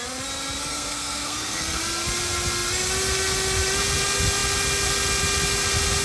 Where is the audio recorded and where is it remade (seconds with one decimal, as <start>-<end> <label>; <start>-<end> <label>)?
0.0-0.7 recorded; 0.7-1.8 remade; 1.8-6.0 recorded